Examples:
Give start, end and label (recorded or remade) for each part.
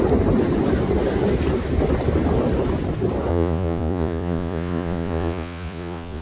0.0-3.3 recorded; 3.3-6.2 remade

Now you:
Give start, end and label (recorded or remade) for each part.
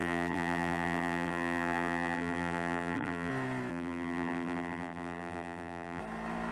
0.0-3.3 remade; 3.3-3.7 recorded; 3.7-6.0 remade; 6.0-6.5 recorded